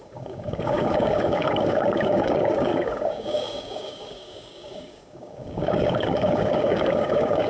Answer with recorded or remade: remade